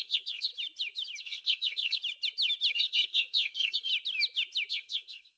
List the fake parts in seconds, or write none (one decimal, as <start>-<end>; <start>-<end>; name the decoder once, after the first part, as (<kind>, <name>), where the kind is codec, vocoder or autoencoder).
0.0-0.5 (codec, SNAC); 1.2-2.0; 2.7-3.9; 4.7-5.4